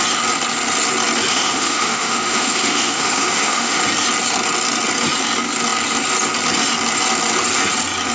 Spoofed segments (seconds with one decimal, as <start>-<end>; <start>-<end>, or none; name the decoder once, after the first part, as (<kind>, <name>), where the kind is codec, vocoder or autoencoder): 1.3-3.8 (autoencoder, DAC-VAE)